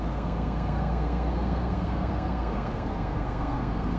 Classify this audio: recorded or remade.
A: remade